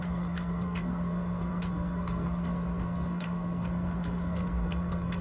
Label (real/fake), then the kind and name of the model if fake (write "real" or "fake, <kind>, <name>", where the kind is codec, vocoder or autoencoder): fake, codec, SNAC